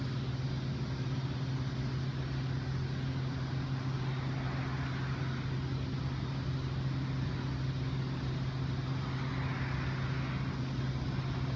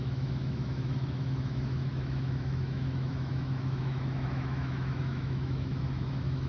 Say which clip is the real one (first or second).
first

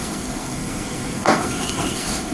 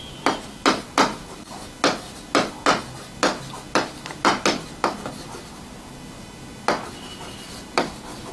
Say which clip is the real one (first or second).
second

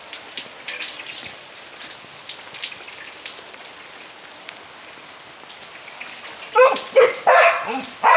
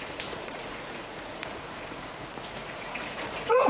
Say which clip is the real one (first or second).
first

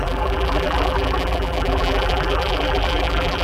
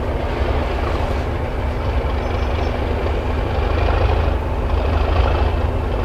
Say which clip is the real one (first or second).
second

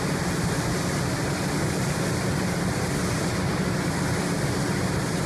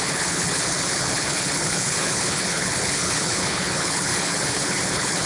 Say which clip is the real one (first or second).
first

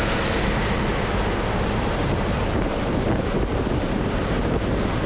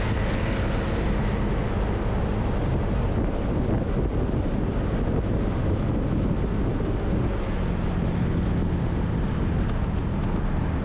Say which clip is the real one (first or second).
second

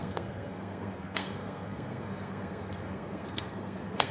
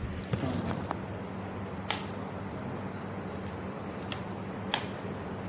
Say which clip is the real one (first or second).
second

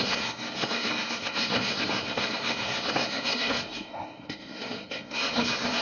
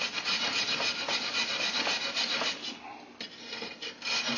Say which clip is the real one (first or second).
second